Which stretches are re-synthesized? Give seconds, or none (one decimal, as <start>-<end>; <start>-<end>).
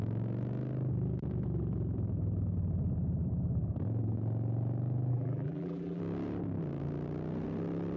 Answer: 5.1-6.0